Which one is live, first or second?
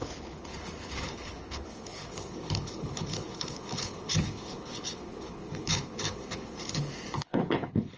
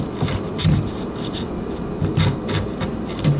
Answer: second